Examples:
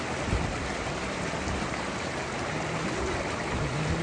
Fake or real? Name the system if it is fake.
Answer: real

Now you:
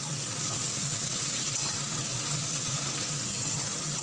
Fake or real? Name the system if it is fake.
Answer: fake, vocoder, WaveNeXt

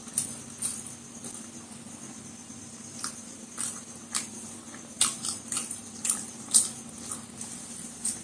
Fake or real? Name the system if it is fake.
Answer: real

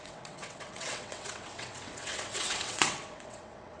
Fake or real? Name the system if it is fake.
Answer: fake, vocoder, WaveNeXt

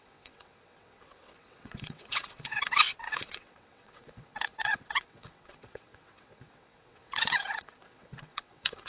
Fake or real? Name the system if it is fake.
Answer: fake, vocoder, WaveNeXt